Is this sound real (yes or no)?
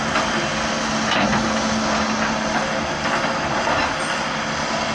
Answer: yes